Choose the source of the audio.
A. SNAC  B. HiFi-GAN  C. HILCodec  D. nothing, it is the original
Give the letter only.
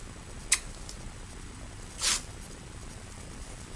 D